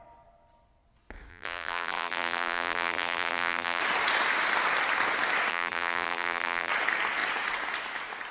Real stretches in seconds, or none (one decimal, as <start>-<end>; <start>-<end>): 0.0-1.3; 3.8-5.5; 6.7-8.3